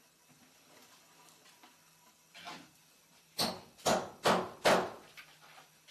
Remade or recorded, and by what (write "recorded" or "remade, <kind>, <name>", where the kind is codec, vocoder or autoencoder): recorded